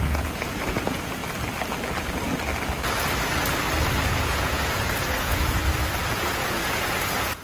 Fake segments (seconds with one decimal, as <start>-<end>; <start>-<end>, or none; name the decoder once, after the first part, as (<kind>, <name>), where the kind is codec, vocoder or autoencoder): 0.0-1.2 (vocoder, Vocos); 4.1-5.6; 6.1-7.4